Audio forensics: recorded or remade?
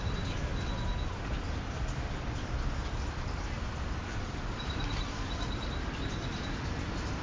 remade